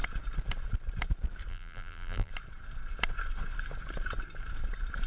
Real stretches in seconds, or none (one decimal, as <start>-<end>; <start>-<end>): 0.0-1.5; 2.3-5.1